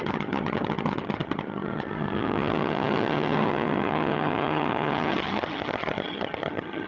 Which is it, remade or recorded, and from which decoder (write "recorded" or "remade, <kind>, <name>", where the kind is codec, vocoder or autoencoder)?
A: remade, vocoder, HiFi-GAN